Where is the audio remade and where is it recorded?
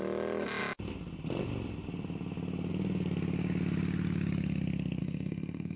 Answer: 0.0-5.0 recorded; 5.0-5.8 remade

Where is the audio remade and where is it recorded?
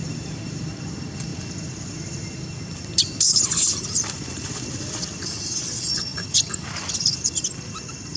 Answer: 0.0-8.2 remade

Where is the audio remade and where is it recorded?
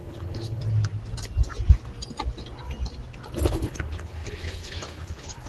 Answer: 0.0-0.6 remade; 0.6-3.5 recorded; 3.5-5.5 remade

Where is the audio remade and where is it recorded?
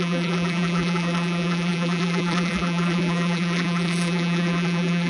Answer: 0.0-5.1 remade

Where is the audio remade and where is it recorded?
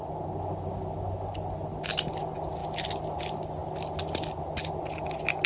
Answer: 0.0-5.5 recorded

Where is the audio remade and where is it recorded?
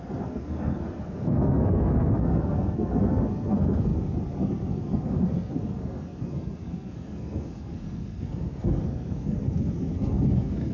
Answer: 0.0-10.7 remade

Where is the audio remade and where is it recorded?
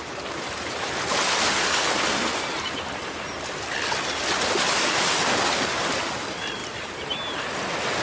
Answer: 0.0-8.0 recorded